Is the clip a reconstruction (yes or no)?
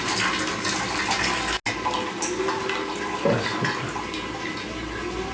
no